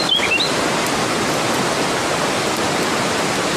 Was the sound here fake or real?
real